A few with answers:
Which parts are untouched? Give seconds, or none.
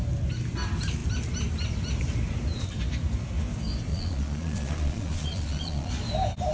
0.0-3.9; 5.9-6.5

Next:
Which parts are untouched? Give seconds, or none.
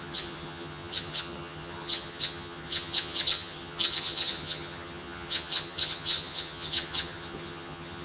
none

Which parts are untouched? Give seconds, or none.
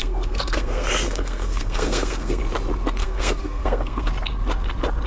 2.4-3.0; 4.1-5.1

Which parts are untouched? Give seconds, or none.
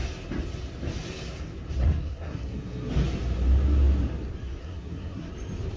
0.0-1.8; 2.9-4.6; 5.3-5.8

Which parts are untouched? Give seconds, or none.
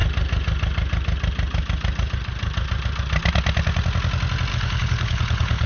0.0-4.5